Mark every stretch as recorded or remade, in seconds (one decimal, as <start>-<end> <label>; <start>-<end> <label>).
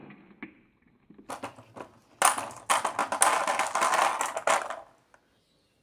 0.0-5.8 recorded